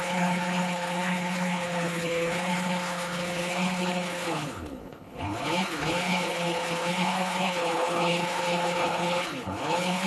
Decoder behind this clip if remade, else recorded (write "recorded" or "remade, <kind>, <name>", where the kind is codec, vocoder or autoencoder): remade, codec, HILCodec